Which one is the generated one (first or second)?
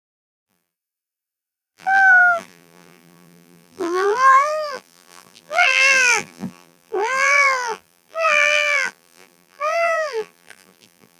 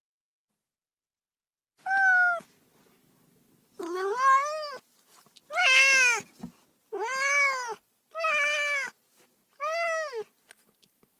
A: first